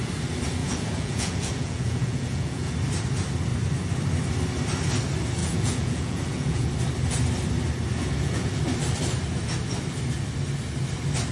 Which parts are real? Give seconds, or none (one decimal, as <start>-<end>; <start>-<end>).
0.0-0.6; 2.7-5.4; 6.7-8.0; 8.6-11.3